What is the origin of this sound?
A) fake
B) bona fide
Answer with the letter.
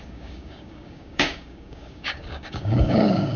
A